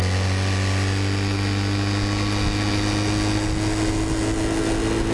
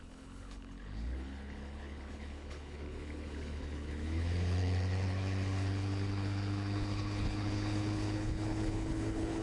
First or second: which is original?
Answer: first